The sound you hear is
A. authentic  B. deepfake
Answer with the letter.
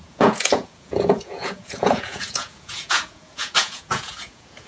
B